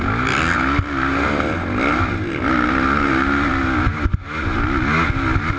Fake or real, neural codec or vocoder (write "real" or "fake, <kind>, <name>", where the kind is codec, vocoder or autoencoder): real